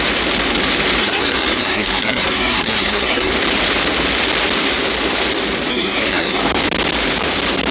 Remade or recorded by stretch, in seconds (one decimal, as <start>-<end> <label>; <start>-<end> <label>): 0.0-1.0 recorded; 1.0-3.3 remade; 3.3-5.7 recorded; 5.7-6.4 remade; 6.4-7.7 recorded